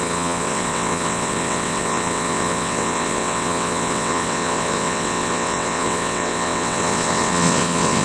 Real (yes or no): no